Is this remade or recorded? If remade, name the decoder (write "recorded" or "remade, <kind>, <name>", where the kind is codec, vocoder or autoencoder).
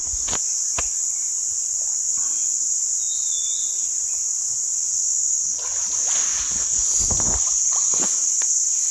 recorded